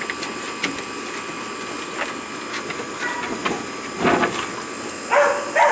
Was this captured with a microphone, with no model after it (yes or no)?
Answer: yes